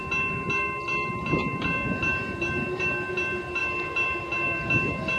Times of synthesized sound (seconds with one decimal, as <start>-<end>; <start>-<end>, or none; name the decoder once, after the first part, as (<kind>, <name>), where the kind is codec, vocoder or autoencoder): 2.1-3.1 (vocoder, BigVGAN v2); 3.6-4.2